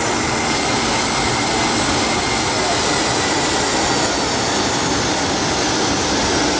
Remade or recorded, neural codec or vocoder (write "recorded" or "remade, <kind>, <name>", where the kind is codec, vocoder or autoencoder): recorded